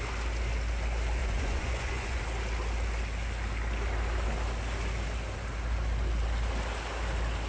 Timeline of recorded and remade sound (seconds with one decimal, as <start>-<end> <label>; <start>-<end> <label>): 0.0-1.2 recorded; 1.2-2.2 remade; 2.2-7.5 recorded